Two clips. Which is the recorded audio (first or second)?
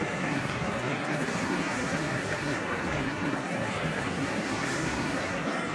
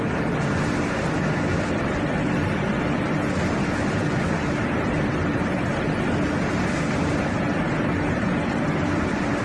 second